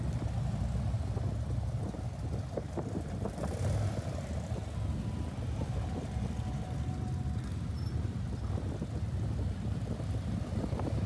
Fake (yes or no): no